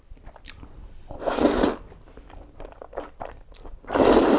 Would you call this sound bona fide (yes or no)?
no